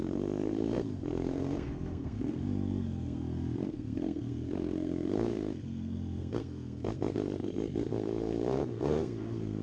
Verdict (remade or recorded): remade